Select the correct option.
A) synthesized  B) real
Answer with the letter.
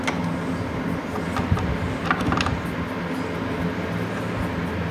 B